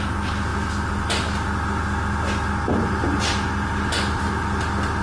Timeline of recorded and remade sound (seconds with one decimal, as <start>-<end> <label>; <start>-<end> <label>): 0.0-5.0 recorded